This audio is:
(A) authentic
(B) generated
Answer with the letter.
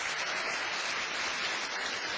A